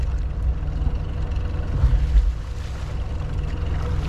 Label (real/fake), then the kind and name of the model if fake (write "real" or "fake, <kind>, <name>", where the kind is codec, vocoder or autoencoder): real